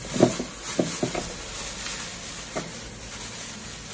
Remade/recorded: recorded